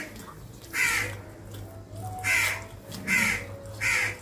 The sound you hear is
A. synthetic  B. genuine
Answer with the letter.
B